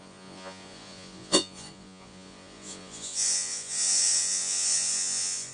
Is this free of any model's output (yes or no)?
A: no